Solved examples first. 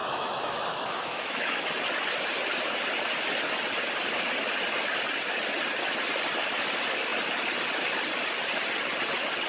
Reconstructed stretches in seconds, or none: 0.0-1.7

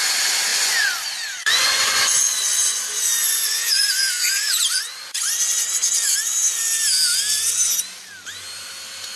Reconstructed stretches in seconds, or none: 0.5-5.3

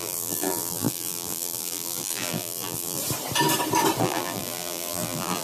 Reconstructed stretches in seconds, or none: 0.0-3.0; 4.0-5.4

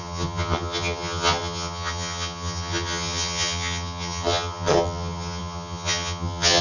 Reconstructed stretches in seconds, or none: 0.0-6.6

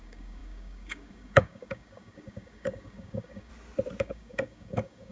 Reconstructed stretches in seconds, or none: 0.0-3.5; 4.0-5.1

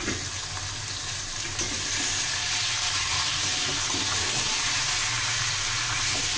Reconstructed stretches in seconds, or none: none